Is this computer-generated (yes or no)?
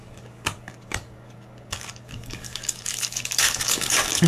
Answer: yes